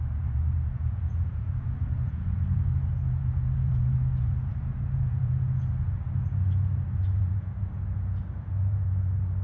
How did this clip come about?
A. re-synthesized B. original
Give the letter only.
A